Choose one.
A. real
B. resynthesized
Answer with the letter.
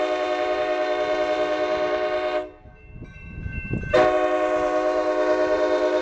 B